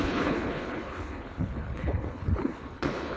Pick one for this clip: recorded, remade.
remade